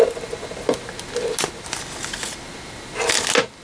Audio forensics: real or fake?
real